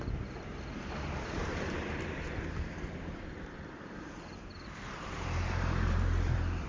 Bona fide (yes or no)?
no